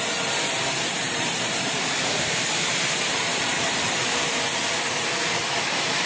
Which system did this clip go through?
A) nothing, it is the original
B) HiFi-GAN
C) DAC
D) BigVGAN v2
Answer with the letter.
D